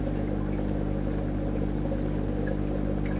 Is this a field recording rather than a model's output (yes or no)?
no